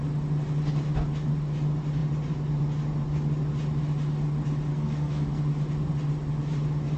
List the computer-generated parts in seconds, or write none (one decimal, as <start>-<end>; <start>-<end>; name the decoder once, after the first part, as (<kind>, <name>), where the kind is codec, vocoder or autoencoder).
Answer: 4.7-5.4 (codec, SNAC)